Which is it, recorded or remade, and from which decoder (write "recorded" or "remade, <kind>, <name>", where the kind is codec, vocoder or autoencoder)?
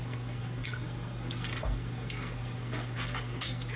remade, codec, SNAC